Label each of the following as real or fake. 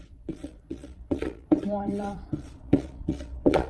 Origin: fake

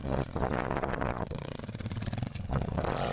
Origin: fake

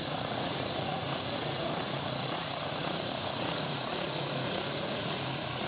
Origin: fake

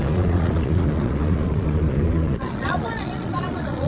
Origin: fake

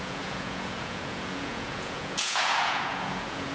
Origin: fake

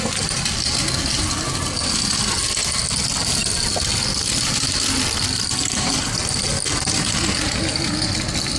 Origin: real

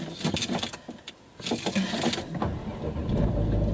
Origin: real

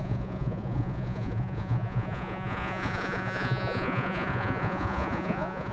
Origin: fake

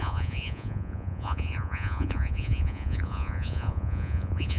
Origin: fake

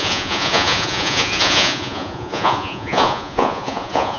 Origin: fake